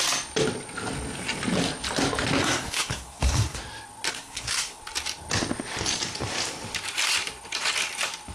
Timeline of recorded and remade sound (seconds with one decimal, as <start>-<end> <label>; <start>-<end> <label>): 0.0-2.4 recorded; 2.4-3.6 remade; 3.6-4.1 recorded; 4.1-4.8 remade; 4.8-8.3 recorded